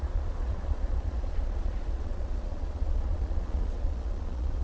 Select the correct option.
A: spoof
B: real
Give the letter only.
A